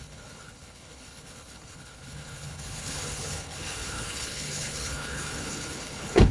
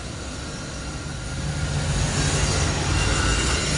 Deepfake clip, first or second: first